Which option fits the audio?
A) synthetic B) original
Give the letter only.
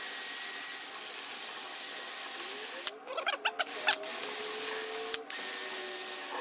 B